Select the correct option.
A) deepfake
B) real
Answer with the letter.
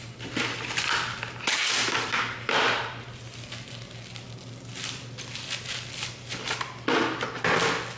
B